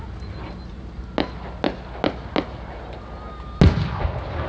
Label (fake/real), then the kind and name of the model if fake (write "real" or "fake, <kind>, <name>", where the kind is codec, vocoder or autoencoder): real